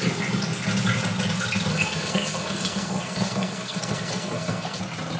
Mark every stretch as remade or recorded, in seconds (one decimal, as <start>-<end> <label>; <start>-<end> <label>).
0.0-1.7 recorded; 1.7-4.8 remade; 4.8-5.2 recorded